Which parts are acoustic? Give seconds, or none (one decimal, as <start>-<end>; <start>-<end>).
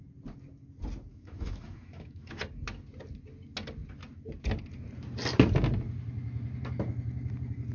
0.0-1.1; 2.4-7.7